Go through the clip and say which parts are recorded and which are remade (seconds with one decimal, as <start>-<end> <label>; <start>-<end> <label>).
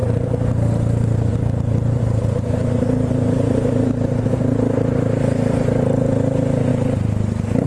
0.0-4.4 remade; 4.4-7.7 recorded